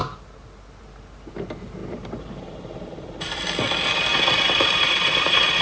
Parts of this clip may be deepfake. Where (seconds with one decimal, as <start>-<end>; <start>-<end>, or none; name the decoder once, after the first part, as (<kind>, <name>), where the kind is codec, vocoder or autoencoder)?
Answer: 1.8-3.3 (vocoder, BigVGAN v2); 4.1-5.6